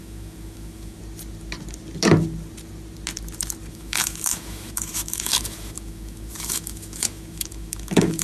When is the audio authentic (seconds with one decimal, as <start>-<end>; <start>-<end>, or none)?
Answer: 1.0-3.7